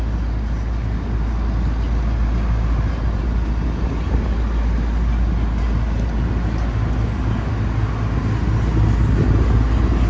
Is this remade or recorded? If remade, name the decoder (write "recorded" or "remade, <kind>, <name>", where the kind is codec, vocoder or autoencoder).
recorded